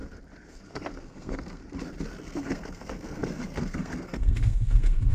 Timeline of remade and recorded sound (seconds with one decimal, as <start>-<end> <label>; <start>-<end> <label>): 0.0-0.5 recorded; 0.5-1.6 remade; 1.6-2.2 recorded; 2.2-5.1 remade

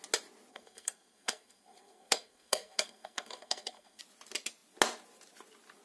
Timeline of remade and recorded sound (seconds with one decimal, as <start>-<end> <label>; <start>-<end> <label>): 0.0-0.5 recorded; 0.5-4.0 remade; 4.0-5.8 recorded